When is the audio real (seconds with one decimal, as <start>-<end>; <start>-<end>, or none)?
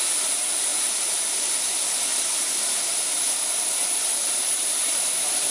0.0-5.5